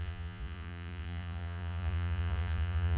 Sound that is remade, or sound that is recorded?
remade